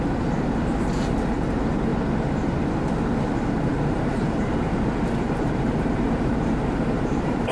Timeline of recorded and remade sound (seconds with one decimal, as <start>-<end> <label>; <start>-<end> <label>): 0.0-3.7 recorded; 3.7-7.5 remade